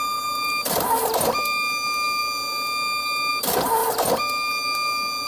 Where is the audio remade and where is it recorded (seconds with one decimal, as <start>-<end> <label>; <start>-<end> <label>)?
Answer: 0.0-5.3 recorded